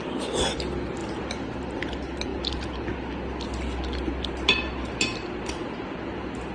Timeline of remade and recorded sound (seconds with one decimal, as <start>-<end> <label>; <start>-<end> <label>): 0.0-1.0 recorded; 1.0-1.8 remade; 1.8-6.5 recorded